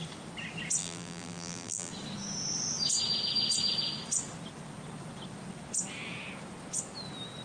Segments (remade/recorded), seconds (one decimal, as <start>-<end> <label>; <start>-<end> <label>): 0.0-0.8 recorded; 0.8-1.9 remade; 1.9-7.4 recorded